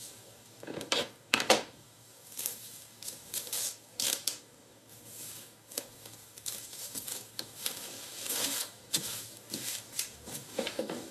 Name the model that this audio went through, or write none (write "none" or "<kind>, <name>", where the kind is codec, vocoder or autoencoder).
codec, DAC